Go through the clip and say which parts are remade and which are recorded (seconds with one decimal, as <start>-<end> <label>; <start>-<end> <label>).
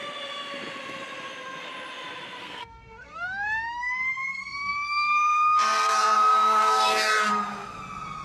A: 0.0-2.4 recorded; 2.4-7.3 remade; 7.3-8.2 recorded